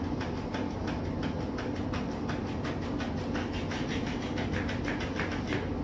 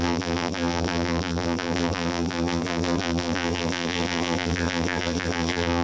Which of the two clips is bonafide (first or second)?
first